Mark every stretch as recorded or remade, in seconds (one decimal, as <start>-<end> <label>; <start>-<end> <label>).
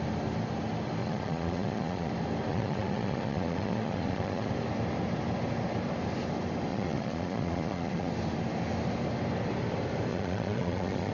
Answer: 0.0-1.0 recorded; 1.0-2.1 remade; 2.1-2.5 recorded; 2.5-4.5 remade; 4.5-6.7 recorded; 6.7-8.1 remade; 8.1-10.1 recorded; 10.1-11.1 remade